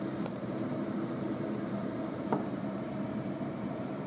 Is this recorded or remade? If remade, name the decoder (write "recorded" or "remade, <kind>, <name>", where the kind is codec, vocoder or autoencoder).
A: remade, vocoder, BigVGAN v2